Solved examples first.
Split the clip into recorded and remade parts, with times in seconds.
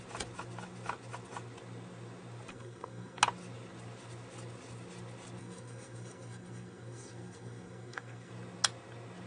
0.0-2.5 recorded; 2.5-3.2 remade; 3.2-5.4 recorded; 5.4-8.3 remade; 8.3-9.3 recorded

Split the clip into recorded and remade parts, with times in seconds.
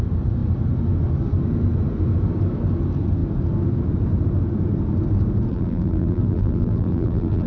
0.0-5.5 recorded; 5.5-7.5 remade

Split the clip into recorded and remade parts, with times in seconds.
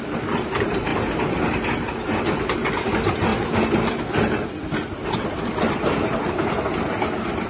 0.0-0.9 remade; 0.9-2.3 recorded; 2.3-3.3 remade; 3.3-4.3 recorded; 4.3-7.5 remade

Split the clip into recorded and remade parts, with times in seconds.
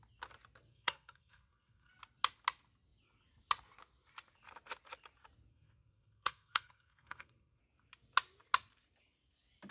0.0-0.7 recorded; 0.7-1.9 remade; 1.9-5.5 recorded; 5.5-7.6 remade; 7.6-9.7 recorded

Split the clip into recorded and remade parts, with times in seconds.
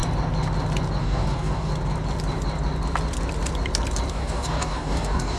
0.0-1.0 recorded; 1.0-1.7 remade; 1.7-4.1 recorded; 4.1-5.4 remade